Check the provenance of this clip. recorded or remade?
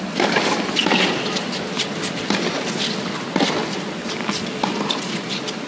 recorded